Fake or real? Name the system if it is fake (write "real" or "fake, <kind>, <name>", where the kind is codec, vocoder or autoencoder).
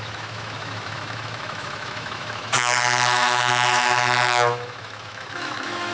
fake, autoencoder, DAC-VAE